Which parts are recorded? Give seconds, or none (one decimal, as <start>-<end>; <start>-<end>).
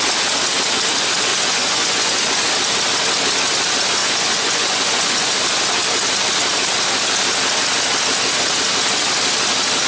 0.0-1.3; 2.5-4.0; 5.3-9.9